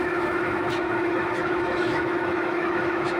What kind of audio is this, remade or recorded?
remade